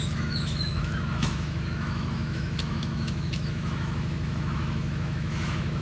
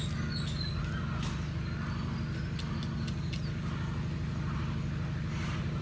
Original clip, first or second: second